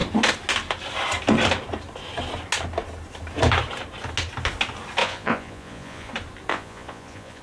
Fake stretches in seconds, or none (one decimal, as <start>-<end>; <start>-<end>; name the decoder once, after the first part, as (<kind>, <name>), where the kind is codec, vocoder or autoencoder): 5.0-6.1 (vocoder, Vocos); 6.5-7.4